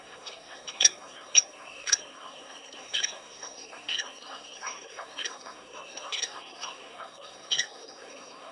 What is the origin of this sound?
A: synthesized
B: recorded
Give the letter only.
A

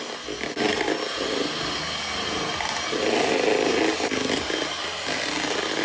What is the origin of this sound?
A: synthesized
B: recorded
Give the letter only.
B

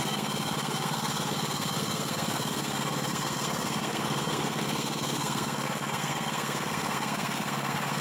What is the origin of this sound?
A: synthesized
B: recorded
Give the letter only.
A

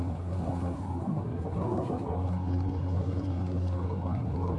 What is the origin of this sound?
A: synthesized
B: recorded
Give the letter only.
A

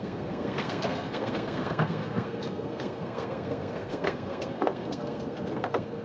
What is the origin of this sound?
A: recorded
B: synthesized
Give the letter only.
B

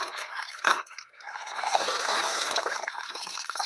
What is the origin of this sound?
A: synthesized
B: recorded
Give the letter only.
A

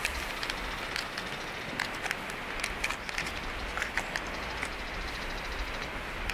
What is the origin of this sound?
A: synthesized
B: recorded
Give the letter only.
B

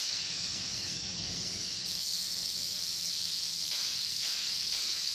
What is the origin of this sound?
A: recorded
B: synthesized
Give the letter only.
B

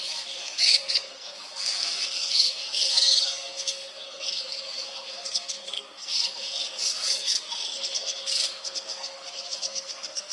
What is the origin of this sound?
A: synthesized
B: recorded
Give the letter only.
A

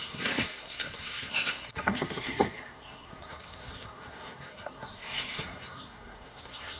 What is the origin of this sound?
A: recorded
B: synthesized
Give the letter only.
B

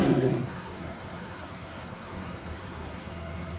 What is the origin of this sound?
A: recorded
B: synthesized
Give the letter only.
B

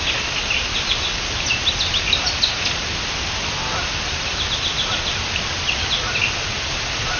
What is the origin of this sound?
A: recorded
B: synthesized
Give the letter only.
A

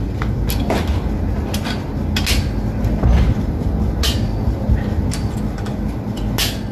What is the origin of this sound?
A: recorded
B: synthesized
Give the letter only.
A